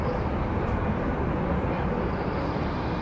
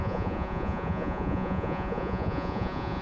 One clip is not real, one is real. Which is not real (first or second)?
second